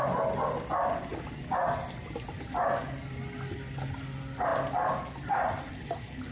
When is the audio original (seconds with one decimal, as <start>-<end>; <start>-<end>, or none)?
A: 0.0-6.3